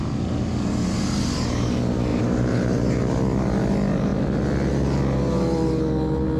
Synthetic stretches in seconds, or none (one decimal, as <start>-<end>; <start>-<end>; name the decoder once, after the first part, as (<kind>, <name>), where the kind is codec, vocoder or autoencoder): 2.1-3.0 (vocoder, BigVGAN v2)